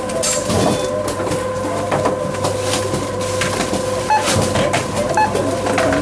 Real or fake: real